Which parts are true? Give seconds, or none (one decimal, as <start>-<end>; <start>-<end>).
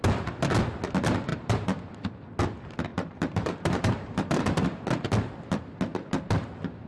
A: 0.0-1.3; 1.9-2.9; 4.8-6.9